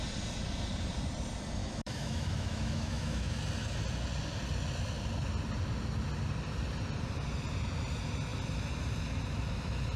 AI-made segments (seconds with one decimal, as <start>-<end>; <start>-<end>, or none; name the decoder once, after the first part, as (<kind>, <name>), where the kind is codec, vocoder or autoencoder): 1.6-3.4 (autoencoder, DAC-VAE)